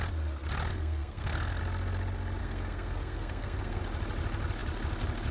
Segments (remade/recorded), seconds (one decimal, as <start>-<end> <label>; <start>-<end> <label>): 0.0-0.7 recorded; 0.7-1.6 remade; 1.6-2.4 recorded; 2.4-3.8 remade; 3.8-5.3 recorded